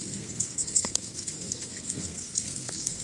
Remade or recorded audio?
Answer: remade